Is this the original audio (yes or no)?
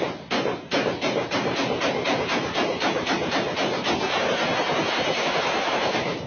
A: yes